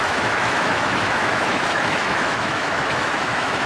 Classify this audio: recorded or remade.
remade